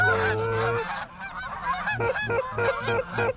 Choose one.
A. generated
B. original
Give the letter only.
B